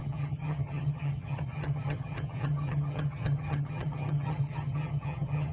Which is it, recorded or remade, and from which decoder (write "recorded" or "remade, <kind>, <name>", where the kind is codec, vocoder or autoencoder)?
remade, vocoder, HiFi-GAN